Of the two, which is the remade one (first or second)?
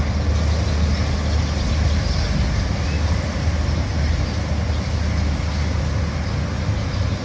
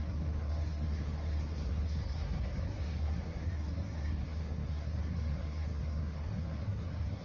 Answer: second